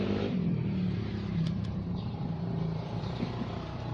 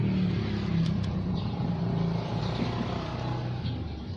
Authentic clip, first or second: second